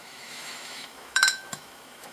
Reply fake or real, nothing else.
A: fake